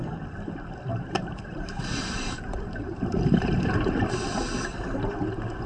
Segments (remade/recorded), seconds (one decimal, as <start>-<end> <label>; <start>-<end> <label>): 0.0-0.9 recorded; 0.9-4.3 remade; 4.3-5.7 recorded